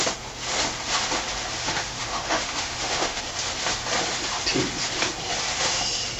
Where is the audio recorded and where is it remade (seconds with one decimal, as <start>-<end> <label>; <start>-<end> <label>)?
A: 0.0-1.6 recorded; 1.6-3.2 remade; 3.2-6.2 recorded